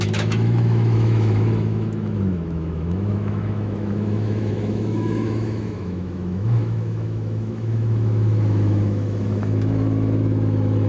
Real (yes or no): no